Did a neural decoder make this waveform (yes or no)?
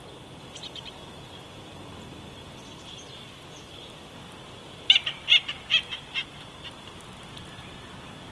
no